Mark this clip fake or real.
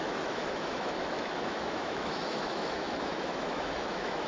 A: fake